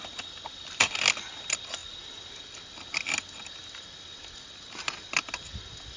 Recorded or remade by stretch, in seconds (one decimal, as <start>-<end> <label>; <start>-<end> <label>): 0.0-6.0 recorded